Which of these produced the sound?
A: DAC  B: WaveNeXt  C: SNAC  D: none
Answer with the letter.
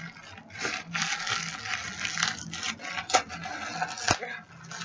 D